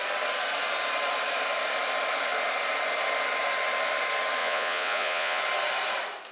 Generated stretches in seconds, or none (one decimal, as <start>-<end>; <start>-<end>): 4.4-5.4